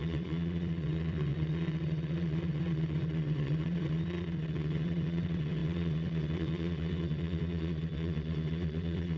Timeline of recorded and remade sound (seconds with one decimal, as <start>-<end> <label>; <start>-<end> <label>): 0.0-9.2 remade